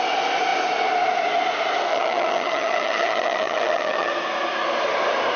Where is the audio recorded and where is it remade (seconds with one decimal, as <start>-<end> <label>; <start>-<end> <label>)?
0.0-1.9 recorded; 1.9-4.1 remade; 4.1-5.4 recorded